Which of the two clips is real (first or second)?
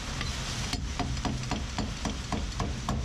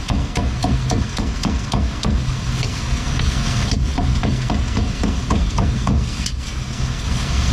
first